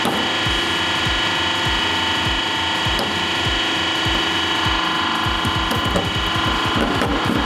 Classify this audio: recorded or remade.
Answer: recorded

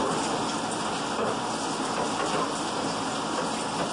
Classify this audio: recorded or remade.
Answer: recorded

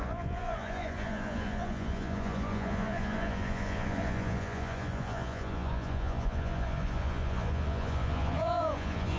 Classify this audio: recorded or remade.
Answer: remade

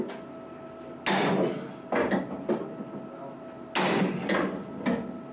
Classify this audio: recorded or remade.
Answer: recorded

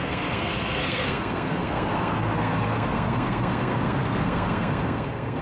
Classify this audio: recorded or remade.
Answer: remade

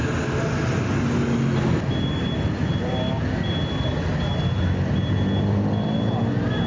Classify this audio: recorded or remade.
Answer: recorded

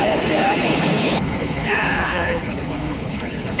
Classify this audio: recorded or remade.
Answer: remade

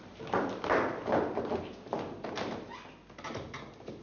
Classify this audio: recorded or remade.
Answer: recorded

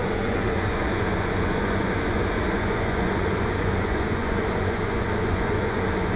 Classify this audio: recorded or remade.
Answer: remade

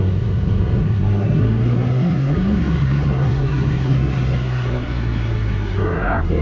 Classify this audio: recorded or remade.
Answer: remade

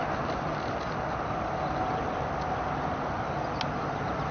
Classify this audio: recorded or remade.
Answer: recorded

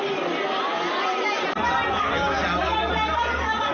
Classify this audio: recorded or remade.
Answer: recorded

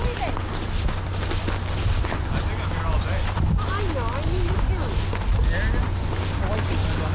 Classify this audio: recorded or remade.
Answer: recorded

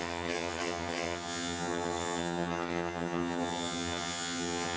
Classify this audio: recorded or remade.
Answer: remade